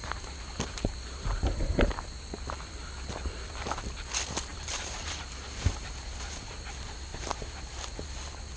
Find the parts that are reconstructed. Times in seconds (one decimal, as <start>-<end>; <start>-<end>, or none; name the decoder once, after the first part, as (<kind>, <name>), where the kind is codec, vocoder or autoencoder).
0.0-1.9 (vocoder, BigVGAN v2); 4.5-6.5; 7.1-7.9